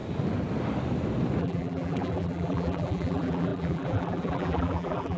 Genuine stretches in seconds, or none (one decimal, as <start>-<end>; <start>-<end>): 0.0-1.4